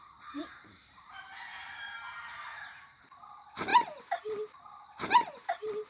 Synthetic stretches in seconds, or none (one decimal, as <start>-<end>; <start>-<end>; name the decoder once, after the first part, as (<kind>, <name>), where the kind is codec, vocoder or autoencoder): 0.0-3.0 (vocoder, BigVGAN v2)